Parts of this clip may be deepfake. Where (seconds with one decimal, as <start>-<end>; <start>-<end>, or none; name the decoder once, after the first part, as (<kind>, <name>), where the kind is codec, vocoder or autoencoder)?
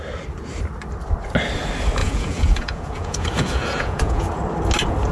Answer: 2.0-4.4 (vocoder, Vocos)